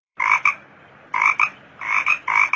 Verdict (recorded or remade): remade